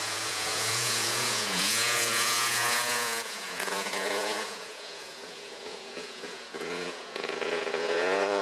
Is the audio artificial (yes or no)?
yes